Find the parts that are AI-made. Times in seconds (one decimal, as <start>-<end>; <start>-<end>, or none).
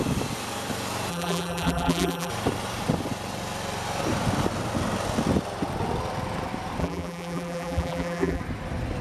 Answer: 1.1-2.3; 6.8-8.4